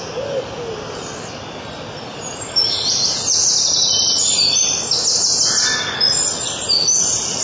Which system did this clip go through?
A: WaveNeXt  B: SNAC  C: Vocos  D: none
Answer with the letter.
D